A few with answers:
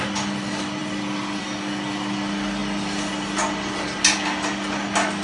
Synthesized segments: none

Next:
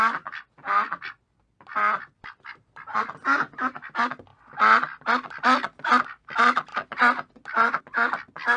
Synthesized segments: none

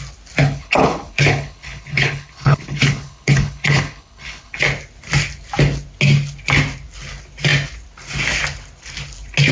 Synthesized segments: 0.4-4.6 (codec, HILCodec)

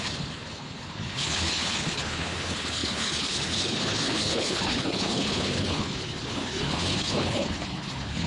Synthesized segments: 0.0-8.3 (codec, HILCodec)

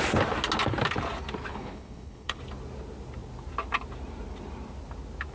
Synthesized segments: 1.5-2.4 (codec, HILCodec)

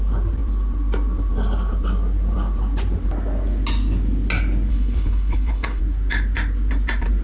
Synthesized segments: 4.7-5.8 (codec, HILCodec)